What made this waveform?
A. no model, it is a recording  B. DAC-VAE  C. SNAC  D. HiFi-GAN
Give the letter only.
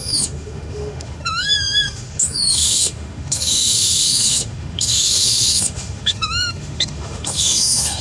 B